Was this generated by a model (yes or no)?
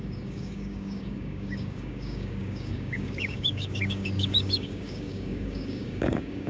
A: yes